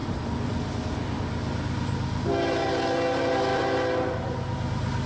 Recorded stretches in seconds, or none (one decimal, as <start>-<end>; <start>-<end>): 0.0-5.1